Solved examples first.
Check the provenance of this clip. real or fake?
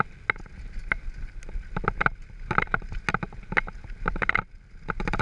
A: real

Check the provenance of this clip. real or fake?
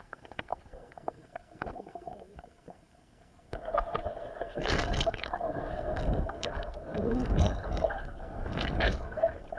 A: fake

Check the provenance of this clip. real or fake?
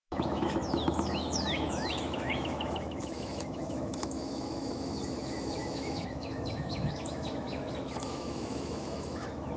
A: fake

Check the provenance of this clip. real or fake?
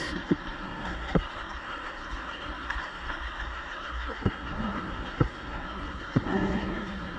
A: fake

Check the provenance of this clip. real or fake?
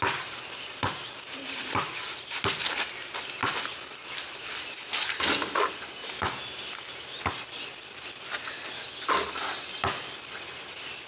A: real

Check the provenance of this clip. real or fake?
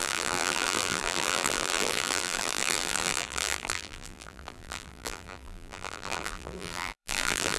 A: fake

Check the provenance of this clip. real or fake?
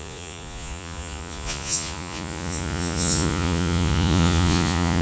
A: fake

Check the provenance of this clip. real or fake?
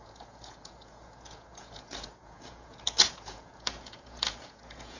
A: fake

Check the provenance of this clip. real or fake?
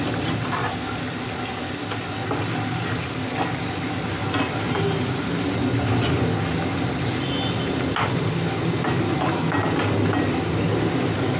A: real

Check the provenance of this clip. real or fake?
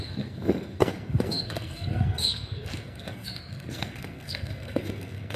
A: fake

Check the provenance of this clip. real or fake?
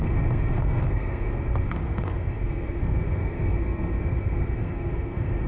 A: fake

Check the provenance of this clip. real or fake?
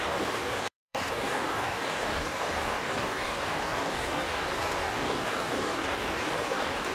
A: fake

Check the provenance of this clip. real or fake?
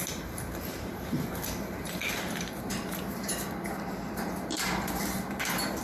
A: fake